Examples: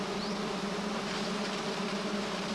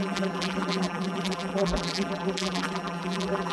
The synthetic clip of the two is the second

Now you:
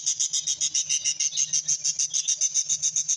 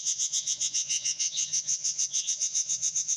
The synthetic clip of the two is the second